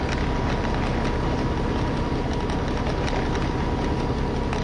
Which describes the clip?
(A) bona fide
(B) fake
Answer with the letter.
A